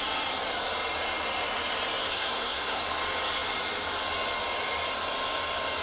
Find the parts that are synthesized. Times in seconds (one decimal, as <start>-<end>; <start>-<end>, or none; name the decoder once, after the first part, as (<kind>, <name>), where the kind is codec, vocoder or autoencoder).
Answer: 2.1-2.8 (codec, SNAC)